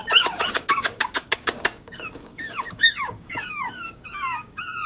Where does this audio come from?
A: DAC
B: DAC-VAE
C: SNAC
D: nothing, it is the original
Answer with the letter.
A